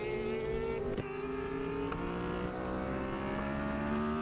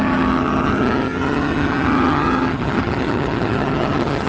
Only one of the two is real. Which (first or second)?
first